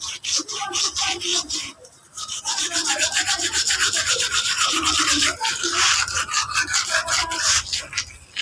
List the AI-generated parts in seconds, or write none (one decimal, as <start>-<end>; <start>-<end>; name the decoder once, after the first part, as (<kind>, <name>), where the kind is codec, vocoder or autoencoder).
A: 1.3-5.8 (vocoder, BigVGAN v2)